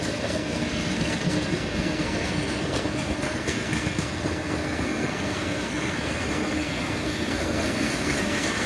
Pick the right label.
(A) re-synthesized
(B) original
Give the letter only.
A